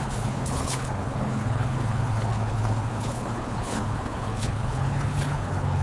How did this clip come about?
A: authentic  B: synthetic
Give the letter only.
B